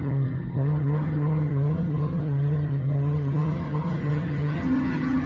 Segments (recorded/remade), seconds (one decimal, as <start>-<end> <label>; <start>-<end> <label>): 0.0-5.3 remade